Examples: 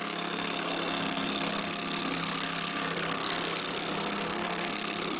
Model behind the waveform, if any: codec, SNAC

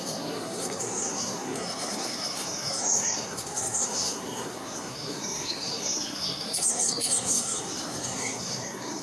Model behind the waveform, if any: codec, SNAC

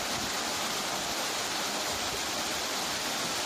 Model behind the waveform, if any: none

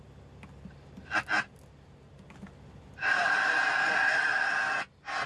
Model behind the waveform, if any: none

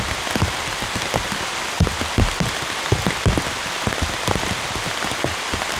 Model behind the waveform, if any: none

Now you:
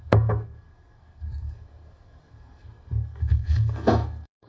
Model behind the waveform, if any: codec, SNAC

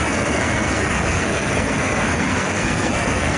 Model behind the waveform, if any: codec, SNAC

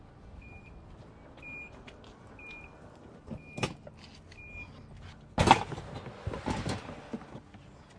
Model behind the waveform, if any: none